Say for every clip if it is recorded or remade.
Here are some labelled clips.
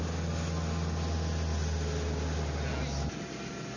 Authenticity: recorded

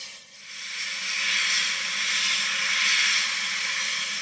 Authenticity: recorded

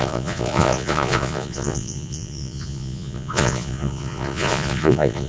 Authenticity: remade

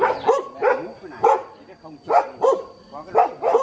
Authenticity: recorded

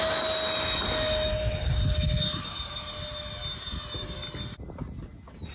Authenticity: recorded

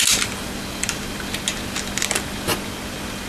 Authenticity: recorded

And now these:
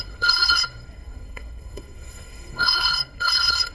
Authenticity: remade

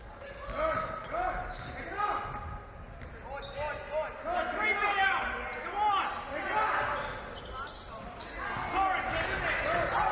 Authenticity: recorded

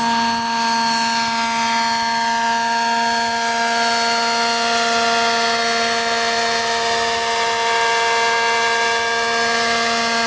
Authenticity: recorded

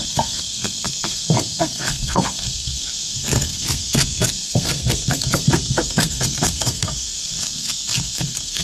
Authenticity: remade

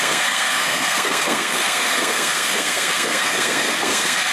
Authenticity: remade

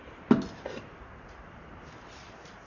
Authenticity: recorded